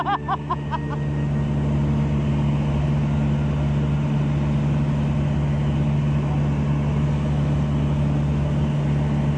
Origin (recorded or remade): recorded